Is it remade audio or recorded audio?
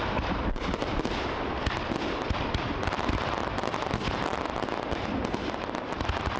recorded